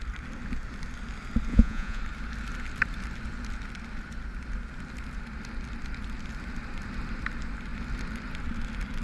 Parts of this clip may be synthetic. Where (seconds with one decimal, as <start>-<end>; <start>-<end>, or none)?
1.5-2.0